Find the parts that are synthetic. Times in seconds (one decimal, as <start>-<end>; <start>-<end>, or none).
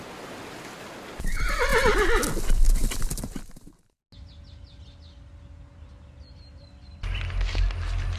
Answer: none